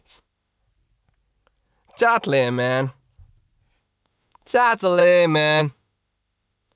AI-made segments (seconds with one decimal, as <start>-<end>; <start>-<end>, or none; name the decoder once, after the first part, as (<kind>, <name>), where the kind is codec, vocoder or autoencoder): 0.0-0.6 (autoencoder, DAC-VAE); 3.8-5.0; 5.6-6.8